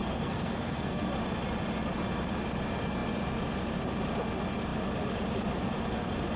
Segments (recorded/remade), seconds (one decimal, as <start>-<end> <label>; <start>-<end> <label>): 0.0-1.0 remade; 1.0-6.4 recorded